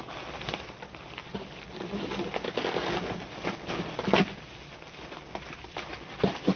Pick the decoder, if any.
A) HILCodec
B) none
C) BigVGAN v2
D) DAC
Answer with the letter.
B